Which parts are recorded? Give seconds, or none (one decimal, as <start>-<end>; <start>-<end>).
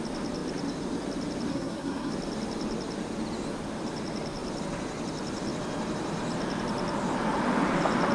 0.0-1.5; 2.1-8.1